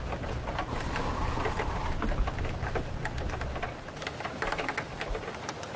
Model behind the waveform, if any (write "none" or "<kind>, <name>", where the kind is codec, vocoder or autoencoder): none